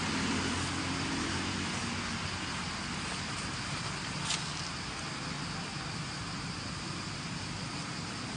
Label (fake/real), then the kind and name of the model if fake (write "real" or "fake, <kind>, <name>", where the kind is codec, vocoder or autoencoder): real